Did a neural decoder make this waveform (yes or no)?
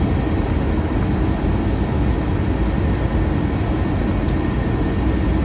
no